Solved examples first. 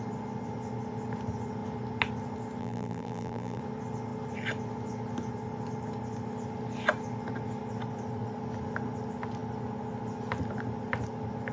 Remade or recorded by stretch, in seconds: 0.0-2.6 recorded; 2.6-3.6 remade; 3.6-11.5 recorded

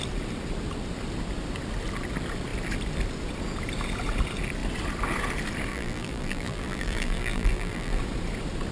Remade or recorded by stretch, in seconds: 0.0-5.7 recorded; 5.7-8.0 remade; 8.0-8.7 recorded

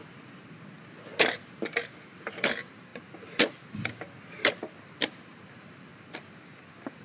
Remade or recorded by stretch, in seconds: 0.0-1.3 recorded; 1.3-2.9 remade; 2.9-5.0 recorded; 5.0-5.9 remade; 5.9-6.6 recorded; 6.6-7.0 remade

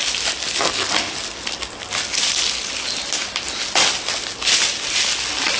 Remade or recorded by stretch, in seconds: 0.0-5.6 recorded

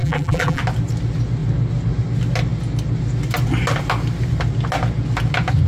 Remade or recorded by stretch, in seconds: 0.0-0.6 remade; 0.6-5.7 recorded

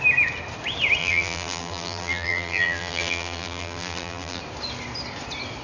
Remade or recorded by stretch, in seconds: 0.0-1.0 recorded; 1.0-4.4 remade; 4.4-5.6 recorded

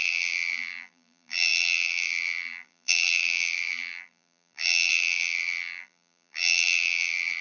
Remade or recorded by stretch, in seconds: 0.0-7.4 remade